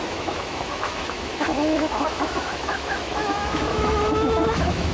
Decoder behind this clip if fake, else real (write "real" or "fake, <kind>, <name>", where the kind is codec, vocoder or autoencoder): fake, autoencoder, DAC-VAE